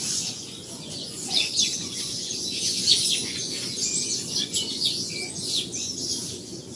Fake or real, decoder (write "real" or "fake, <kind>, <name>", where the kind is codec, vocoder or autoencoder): fake, vocoder, Vocos